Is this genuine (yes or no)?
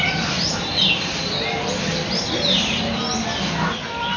yes